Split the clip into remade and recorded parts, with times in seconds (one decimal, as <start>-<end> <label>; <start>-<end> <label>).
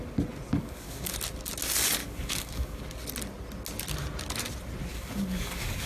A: 0.0-0.5 recorded; 0.5-1.1 remade; 1.1-2.0 recorded; 2.0-2.8 remade; 2.8-4.9 recorded; 4.9-5.9 remade